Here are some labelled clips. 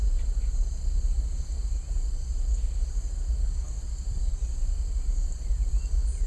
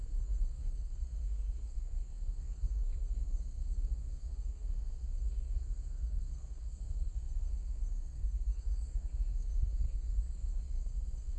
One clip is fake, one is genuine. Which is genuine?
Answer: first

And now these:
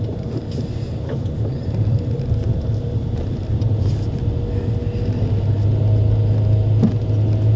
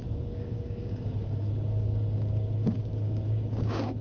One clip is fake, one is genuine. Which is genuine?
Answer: first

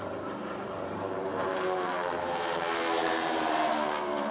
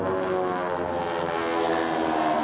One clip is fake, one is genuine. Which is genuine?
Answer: second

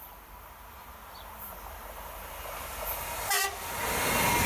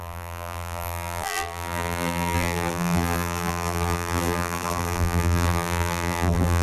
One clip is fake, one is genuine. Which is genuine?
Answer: first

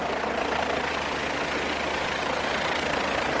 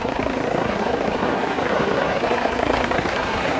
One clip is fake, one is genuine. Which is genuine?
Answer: first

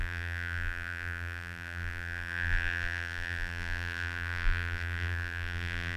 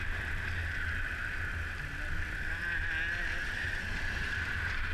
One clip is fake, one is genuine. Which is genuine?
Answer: second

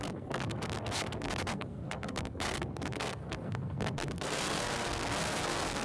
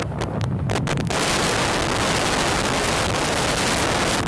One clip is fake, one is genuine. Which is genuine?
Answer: second